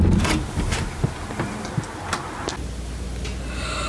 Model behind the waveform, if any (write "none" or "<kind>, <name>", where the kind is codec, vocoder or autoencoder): none